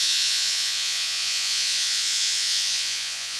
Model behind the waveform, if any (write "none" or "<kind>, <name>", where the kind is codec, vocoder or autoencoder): vocoder, Vocos